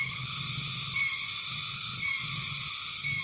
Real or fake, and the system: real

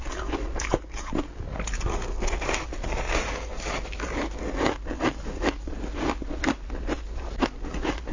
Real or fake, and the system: real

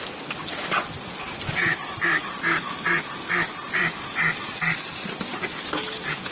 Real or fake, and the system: real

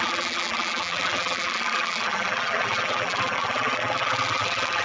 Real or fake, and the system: fake, vocoder, BigVGAN v2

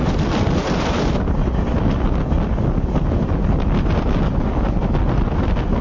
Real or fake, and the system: real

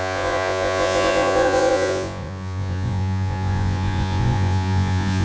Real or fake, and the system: fake, vocoder, Vocos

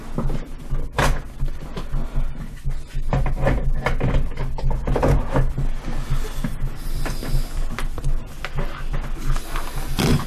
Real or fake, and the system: real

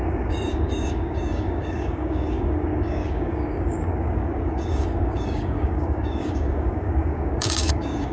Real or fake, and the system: fake, codec, DAC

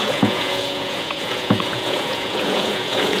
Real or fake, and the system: fake, vocoder, Vocos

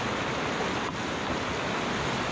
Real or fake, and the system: real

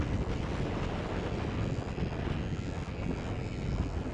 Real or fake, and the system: real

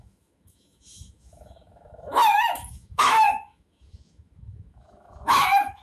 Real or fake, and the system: fake, autoencoder, DAC-VAE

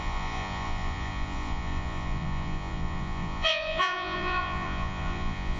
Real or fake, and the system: fake, vocoder, Vocos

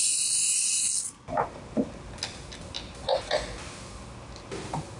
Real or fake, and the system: real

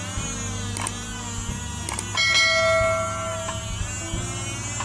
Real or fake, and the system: real